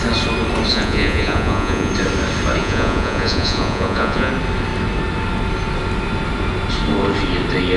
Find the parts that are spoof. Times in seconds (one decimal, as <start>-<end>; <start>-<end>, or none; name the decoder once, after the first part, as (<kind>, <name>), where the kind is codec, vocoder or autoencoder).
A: 0.7-1.9 (vocoder, Vocos); 2.6-4.3